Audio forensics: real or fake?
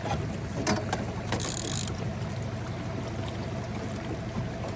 real